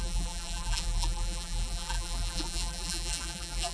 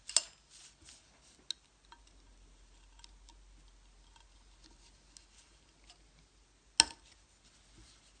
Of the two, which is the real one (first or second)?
second